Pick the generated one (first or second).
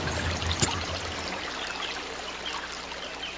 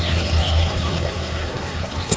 second